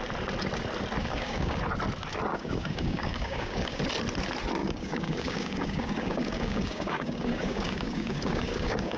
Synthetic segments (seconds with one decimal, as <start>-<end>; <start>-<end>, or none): 1.0-1.6; 2.3-3.8; 4.6-9.0